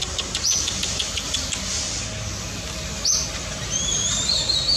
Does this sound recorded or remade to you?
recorded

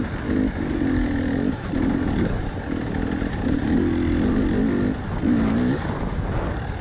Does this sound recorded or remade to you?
recorded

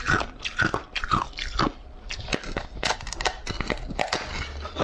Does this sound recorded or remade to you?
recorded